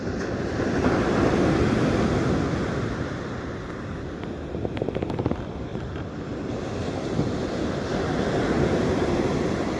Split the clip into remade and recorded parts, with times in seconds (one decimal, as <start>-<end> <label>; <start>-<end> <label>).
0.0-5.7 recorded; 5.7-6.6 remade; 6.6-9.8 recorded